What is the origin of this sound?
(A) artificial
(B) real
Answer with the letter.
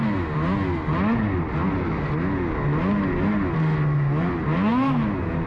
B